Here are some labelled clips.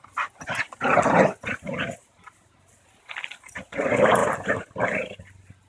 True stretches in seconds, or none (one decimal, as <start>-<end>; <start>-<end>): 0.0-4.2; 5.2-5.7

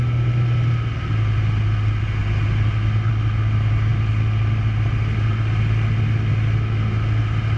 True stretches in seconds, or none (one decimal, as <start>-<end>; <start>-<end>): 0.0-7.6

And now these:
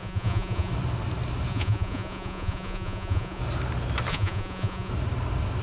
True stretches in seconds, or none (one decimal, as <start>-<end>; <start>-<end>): 0.7-1.5; 3.4-4.1; 4.9-5.6

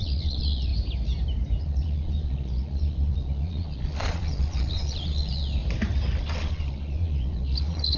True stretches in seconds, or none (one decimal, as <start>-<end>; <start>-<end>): 0.7-1.6; 5.6-6.2

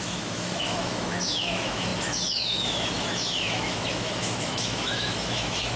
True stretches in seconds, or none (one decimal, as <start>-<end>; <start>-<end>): none

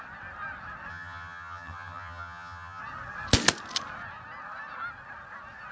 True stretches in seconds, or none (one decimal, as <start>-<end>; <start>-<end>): 0.0-0.9; 2.8-5.7